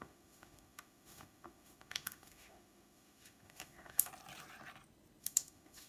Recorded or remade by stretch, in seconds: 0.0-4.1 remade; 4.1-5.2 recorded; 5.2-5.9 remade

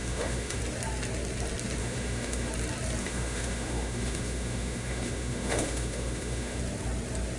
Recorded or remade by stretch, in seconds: 0.0-0.6 remade; 0.6-1.8 recorded; 1.8-2.5 remade; 2.5-3.0 recorded; 3.0-6.6 remade; 6.6-7.4 recorded

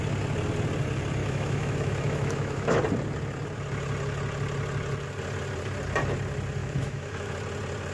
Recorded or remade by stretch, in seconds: 0.0-1.2 recorded; 1.2-2.8 remade; 2.8-6.6 recorded; 6.6-7.3 remade; 7.3-7.9 recorded

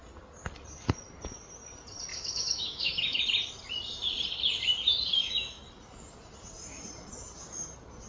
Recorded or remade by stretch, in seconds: 0.0-2.1 recorded; 2.1-3.2 remade; 3.2-5.1 recorded; 5.1-5.6 remade; 5.6-8.1 recorded

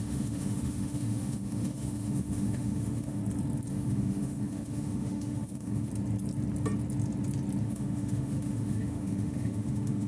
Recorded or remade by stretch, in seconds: 0.0-3.2 remade; 3.2-3.7 recorded; 3.7-5.9 remade; 5.9-7.6 recorded; 7.6-10.1 remade

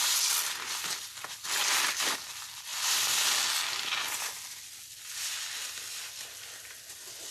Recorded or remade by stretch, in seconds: 0.0-7.3 recorded

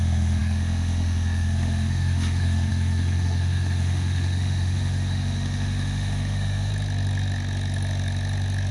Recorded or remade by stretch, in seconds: 0.0-6.7 remade; 6.7-8.7 recorded

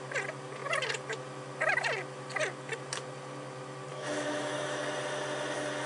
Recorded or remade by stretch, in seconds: 0.0-3.9 recorded; 3.9-4.8 remade; 4.8-5.9 recorded